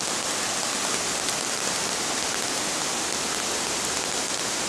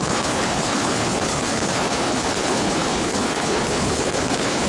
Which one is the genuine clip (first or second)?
first